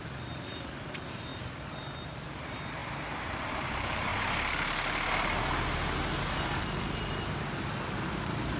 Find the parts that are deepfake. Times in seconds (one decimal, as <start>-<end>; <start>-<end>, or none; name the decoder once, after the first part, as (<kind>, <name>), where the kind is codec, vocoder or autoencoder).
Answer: 0.0-2.8 (vocoder, BigVGAN v2); 3.4-4.1; 7.3-8.6